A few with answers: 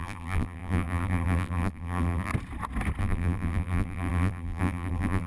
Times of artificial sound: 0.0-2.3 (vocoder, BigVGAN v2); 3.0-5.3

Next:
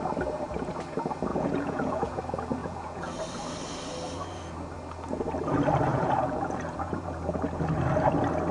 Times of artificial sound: 1.3-2.2 (vocoder, Vocos); 2.6-3.2; 5.9-6.9